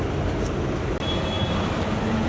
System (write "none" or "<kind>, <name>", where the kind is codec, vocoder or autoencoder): none